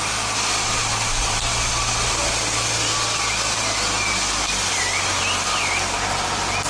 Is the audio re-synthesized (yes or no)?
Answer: no